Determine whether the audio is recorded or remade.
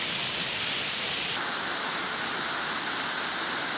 recorded